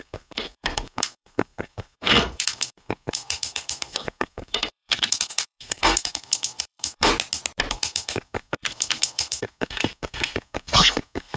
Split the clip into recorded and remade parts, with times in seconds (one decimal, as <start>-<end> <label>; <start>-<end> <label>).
0.0-7.1 remade; 7.1-7.7 recorded; 7.7-11.4 remade